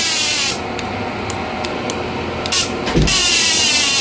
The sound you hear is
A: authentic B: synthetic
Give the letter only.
A